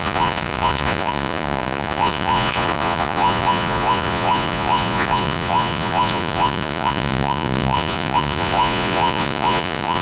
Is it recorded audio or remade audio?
remade